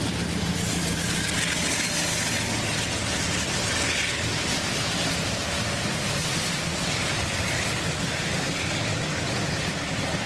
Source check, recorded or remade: recorded